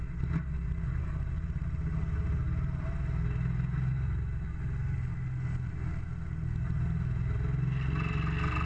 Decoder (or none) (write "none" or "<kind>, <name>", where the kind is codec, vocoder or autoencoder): none